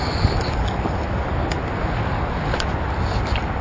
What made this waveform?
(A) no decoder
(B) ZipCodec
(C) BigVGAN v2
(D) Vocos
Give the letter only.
A